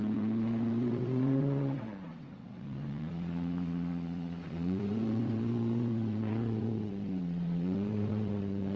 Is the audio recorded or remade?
remade